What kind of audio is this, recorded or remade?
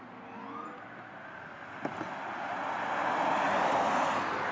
recorded